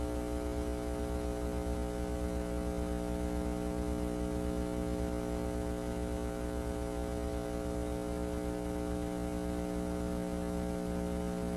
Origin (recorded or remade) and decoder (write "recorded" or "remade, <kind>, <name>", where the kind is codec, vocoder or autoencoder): recorded